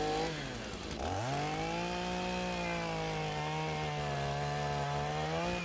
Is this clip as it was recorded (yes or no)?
yes